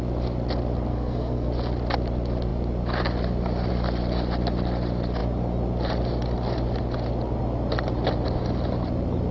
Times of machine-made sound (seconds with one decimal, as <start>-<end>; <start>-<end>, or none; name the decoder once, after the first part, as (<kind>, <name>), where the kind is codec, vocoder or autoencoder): 0.9-1.5 (codec, SNAC)